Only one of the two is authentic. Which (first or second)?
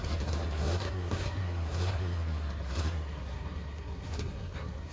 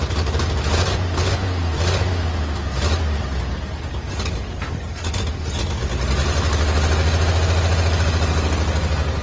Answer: second